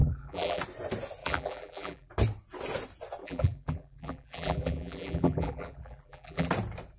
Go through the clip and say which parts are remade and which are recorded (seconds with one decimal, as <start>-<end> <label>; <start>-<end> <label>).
0.0-0.6 remade; 0.6-1.2 recorded; 1.2-2.1 remade; 2.1-3.2 recorded; 3.2-6.5 remade; 6.5-7.0 recorded